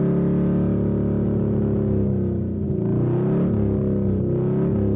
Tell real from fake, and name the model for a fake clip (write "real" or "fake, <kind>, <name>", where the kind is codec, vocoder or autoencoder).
real